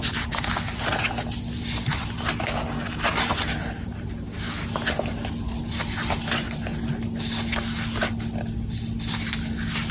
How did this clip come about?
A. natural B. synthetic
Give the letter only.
A